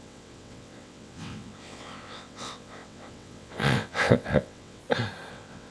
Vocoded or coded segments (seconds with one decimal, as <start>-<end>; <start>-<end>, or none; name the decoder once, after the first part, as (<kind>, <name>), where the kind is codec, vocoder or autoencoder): 0.0-4.8 (vocoder, WaveNeXt); 5.3-5.7